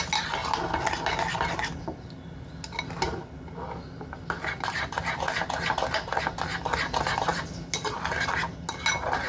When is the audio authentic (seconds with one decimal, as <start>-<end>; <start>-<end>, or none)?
0.0-9.3